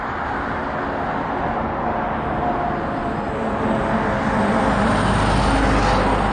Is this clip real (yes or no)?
yes